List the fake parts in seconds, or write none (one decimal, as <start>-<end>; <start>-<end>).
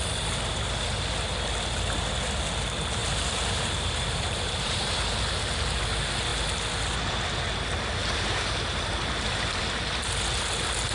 3.0-4.9; 8.0-9.6